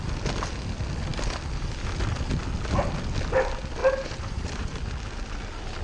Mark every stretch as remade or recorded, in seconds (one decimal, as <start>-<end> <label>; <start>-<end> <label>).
0.0-3.8 recorded; 3.8-4.8 remade; 4.8-5.8 recorded